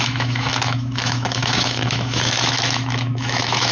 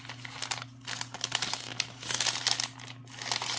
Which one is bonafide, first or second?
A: second